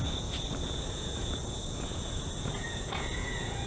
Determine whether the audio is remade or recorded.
remade